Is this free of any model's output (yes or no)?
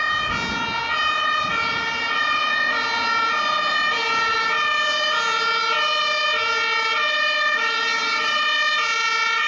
yes